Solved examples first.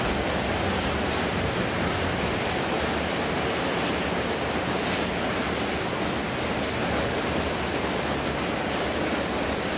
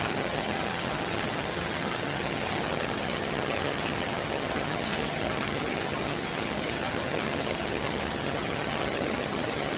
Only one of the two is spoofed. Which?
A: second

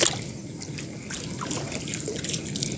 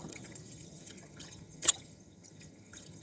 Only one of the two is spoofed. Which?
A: second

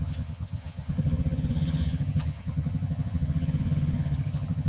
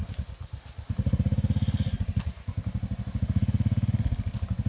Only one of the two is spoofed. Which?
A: first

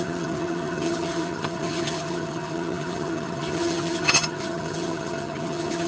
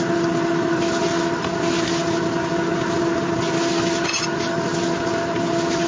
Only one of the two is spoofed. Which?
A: first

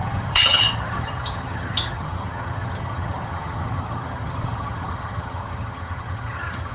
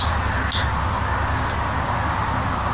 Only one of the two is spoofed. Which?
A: first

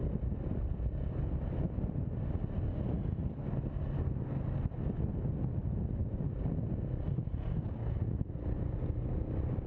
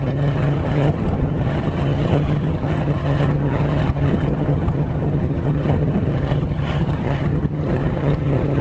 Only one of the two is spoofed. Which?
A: second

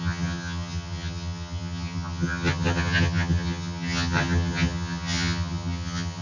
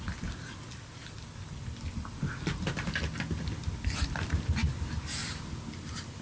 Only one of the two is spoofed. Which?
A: first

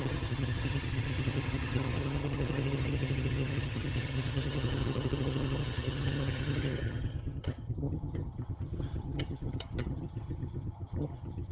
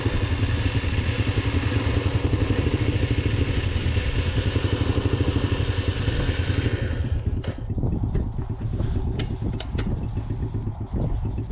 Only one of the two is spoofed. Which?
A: first